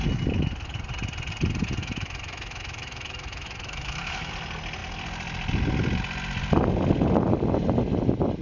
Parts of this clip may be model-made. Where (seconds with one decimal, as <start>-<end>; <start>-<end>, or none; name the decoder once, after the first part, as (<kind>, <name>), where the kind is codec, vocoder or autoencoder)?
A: 1.8-4.3 (autoencoder, DAC-VAE)